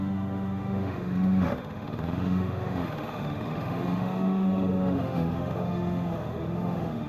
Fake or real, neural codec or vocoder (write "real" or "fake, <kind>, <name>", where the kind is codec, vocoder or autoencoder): fake, autoencoder, DAC-VAE